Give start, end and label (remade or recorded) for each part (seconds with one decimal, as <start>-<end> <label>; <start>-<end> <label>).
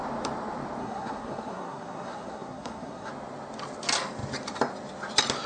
0.0-0.8 recorded; 0.8-3.1 remade; 3.1-5.5 recorded